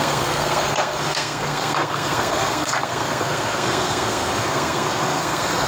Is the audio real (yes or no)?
no